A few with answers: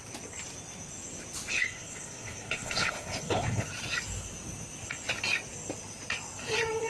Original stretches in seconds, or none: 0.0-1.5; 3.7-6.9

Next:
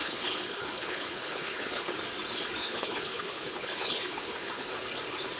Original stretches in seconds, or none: 1.9-2.6; 4.7-5.4